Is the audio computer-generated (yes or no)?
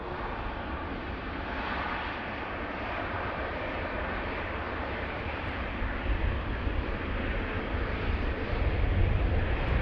yes